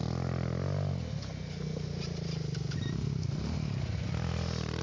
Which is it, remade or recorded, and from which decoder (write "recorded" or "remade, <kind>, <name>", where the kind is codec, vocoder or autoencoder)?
recorded